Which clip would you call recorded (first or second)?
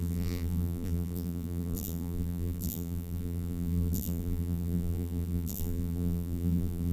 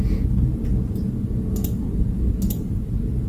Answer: second